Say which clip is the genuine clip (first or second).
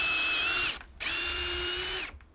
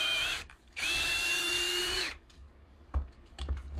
first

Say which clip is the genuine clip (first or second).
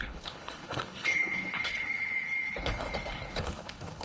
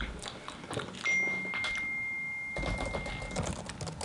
second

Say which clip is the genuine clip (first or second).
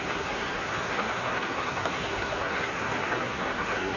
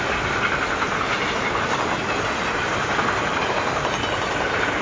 second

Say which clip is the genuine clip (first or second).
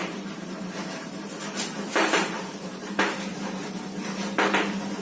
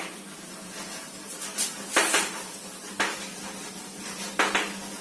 second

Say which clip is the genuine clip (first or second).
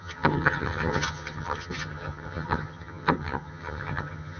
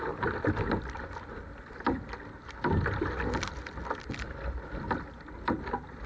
second